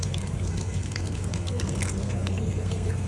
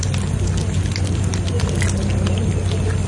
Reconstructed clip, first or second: first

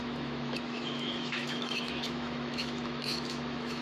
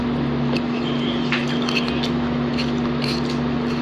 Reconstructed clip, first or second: first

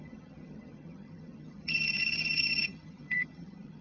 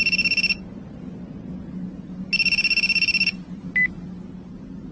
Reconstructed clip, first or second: first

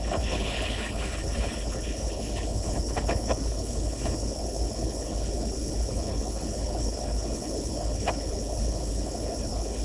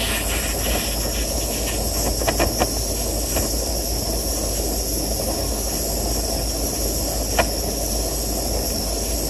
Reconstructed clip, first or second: first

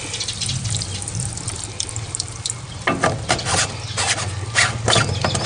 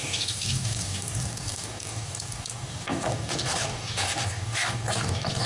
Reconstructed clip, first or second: second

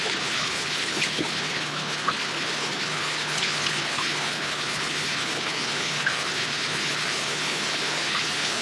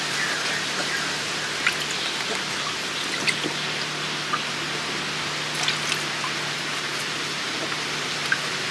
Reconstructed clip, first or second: first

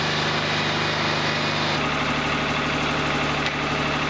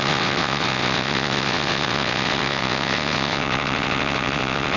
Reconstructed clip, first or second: second